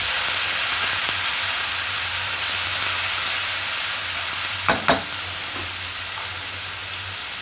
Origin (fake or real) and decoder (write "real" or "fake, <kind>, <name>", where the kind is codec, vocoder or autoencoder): real